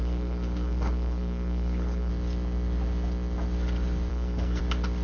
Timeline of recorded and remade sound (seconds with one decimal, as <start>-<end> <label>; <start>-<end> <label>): 0.0-2.1 remade; 2.1-4.1 recorded; 4.1-4.6 remade; 4.6-5.0 recorded